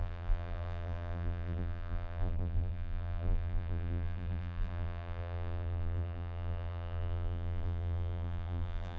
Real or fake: fake